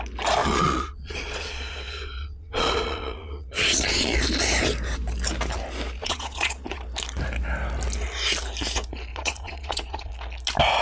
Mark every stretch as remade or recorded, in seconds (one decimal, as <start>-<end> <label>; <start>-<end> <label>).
0.0-0.4 recorded; 0.4-4.2 remade; 4.2-6.0 recorded; 6.0-6.8 remade; 6.8-9.1 recorded; 9.1-10.1 remade; 10.1-10.8 recorded